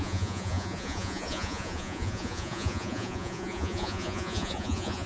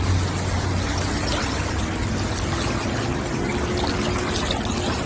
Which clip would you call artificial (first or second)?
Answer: first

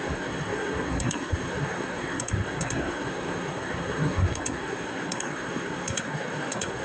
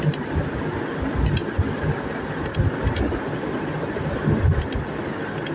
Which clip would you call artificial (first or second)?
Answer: first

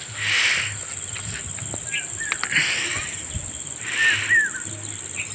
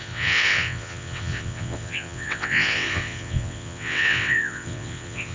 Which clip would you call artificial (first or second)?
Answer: second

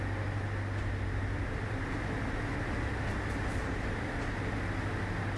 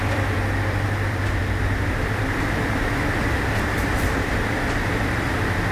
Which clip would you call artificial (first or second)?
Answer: second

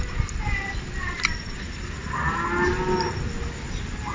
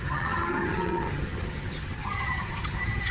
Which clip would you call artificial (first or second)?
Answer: second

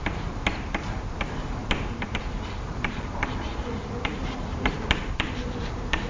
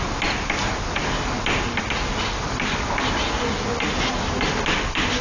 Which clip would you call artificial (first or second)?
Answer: first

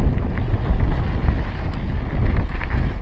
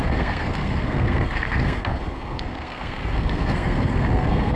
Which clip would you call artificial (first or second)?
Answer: second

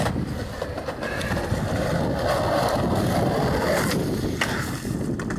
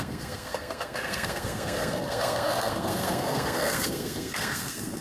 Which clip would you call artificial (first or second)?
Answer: second